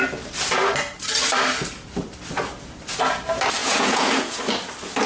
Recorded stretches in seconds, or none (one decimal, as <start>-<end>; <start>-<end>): 0.0-3.6; 4.4-5.1